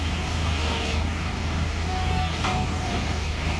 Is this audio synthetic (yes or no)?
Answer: yes